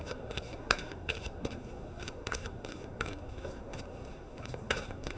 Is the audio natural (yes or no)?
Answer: no